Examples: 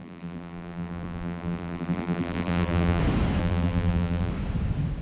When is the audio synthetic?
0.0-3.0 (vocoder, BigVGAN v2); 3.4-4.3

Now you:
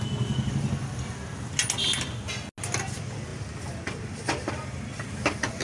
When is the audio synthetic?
3.3-4.8 (vocoder, BigVGAN v2)

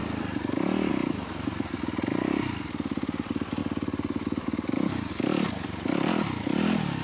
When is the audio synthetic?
3.6-5.1 (vocoder, BigVGAN v2)

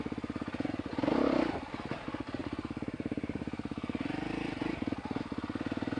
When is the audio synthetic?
2.4-4.8 (vocoder, BigVGAN v2)

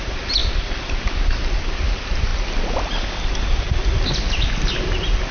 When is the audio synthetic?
0.4-1.7 (vocoder, BigVGAN v2); 2.3-2.8

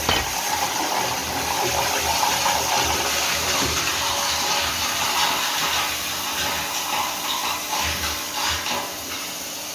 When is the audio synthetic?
none